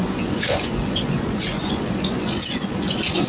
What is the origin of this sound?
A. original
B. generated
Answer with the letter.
B